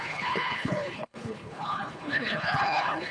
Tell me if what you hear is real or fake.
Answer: fake